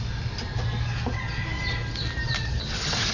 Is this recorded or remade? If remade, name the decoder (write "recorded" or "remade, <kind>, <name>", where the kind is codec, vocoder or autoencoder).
recorded